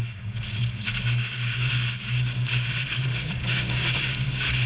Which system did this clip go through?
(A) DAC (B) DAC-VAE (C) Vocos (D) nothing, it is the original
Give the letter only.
A